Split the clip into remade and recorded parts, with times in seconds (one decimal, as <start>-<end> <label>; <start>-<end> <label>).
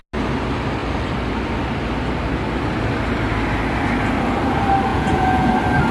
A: 0.0-4.9 recorded; 4.9-5.5 remade; 5.5-5.9 recorded